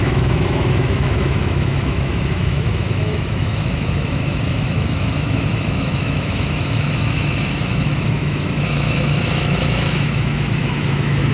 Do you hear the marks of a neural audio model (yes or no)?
yes